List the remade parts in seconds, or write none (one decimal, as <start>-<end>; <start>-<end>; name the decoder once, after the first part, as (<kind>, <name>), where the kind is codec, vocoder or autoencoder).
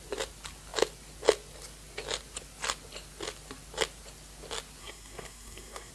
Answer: 4.8-5.9 (codec, SNAC)